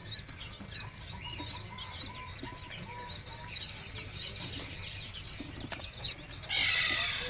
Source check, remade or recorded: recorded